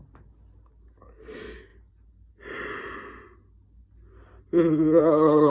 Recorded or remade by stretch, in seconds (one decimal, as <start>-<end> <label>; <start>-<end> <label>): 0.0-5.5 recorded